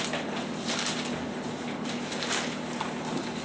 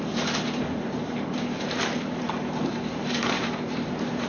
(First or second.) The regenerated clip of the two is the second